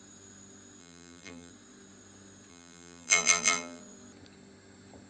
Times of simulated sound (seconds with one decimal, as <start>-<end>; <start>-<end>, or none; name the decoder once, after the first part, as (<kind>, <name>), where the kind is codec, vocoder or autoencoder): 0.8-1.5 (vocoder, BigVGAN v2); 2.5-3.8